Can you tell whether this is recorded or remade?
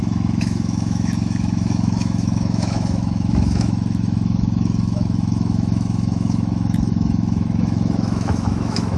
remade